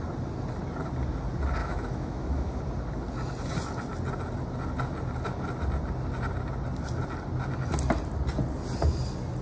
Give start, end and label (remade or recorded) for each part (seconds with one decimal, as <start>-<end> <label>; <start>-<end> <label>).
0.0-1.6 recorded; 1.6-2.6 remade; 2.6-9.4 recorded